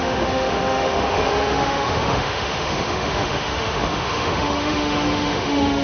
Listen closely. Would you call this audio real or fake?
fake